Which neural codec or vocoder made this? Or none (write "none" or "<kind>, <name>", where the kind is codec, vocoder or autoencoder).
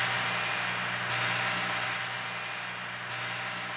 none